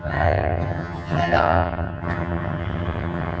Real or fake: fake